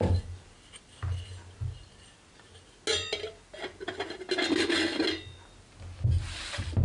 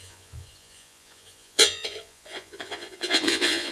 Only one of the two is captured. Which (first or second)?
first